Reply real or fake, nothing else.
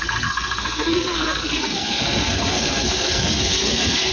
fake